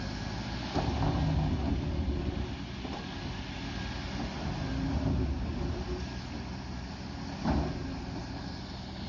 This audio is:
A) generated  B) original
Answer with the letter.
B